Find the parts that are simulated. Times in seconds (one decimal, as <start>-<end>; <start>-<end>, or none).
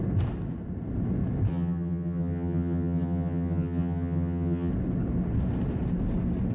1.5-4.7